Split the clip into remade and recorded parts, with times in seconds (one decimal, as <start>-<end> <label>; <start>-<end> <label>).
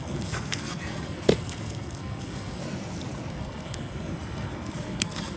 0.0-2.6 remade; 2.6-3.3 recorded; 3.3-5.4 remade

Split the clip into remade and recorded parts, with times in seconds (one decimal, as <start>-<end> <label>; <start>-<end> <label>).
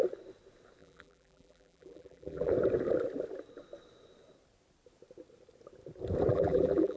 0.0-0.8 recorded; 0.8-2.5 remade; 2.5-6.3 recorded; 6.3-7.0 remade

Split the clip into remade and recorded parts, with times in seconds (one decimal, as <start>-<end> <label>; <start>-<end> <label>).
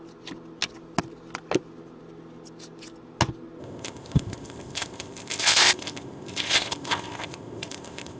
0.0-3.6 recorded; 3.6-8.2 remade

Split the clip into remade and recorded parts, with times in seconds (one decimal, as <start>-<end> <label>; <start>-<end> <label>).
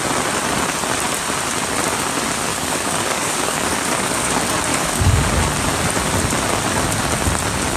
0.0-2.5 recorded; 2.5-4.3 remade; 4.3-4.7 recorded; 4.7-5.3 remade; 5.3-7.8 recorded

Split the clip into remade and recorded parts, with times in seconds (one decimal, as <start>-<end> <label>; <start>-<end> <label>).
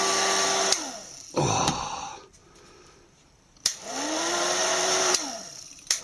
0.0-2.4 recorded; 2.4-6.0 remade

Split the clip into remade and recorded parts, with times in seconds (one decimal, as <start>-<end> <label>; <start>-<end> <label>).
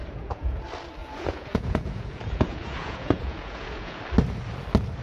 0.0-0.6 remade; 0.6-1.0 recorded; 1.0-4.0 remade; 4.0-5.0 recorded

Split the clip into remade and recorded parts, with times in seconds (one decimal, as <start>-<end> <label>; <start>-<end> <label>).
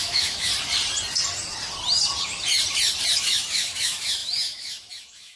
0.0-0.5 remade; 0.5-3.2 recorded; 3.2-5.4 remade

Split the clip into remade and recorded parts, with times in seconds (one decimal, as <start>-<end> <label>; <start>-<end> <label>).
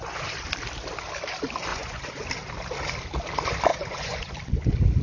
0.0-1.7 recorded; 1.7-2.3 remade; 2.3-3.7 recorded; 3.7-4.3 remade; 4.3-5.0 recorded